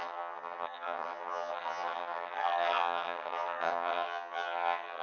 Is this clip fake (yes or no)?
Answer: yes